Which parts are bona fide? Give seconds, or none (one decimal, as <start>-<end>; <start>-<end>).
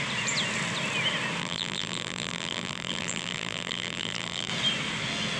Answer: 0.0-1.4; 4.5-5.4